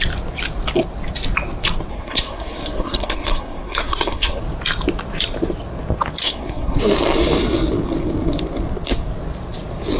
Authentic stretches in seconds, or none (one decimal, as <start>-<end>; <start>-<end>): 0.0-1.9; 4.4-6.2; 6.8-10.0